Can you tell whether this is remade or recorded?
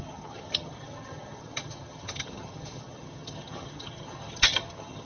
remade